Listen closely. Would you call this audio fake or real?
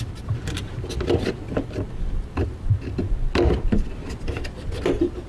real